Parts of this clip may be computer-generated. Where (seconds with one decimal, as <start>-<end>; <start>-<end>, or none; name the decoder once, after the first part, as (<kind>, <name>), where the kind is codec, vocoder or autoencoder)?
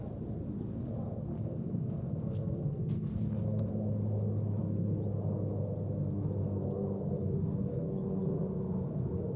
1.3-3.7 (codec, SNAC); 6.4-7.1; 7.7-8.4